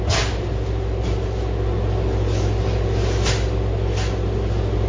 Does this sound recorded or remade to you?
recorded